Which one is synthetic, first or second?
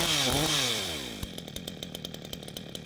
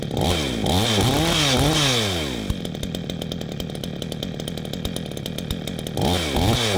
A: first